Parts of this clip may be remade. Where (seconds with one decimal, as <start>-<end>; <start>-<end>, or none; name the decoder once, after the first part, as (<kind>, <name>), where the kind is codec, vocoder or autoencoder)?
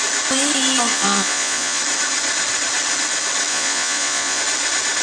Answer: 0.9-1.8 (vocoder, Vocos); 3.5-4.4